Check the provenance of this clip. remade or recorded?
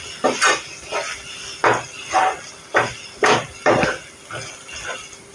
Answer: recorded